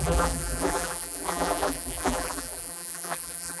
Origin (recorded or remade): remade